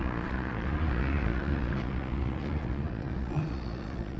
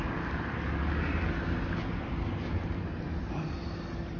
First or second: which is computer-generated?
first